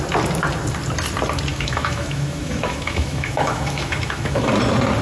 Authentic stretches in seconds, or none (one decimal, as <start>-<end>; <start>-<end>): 0.0-1.5; 4.5-5.0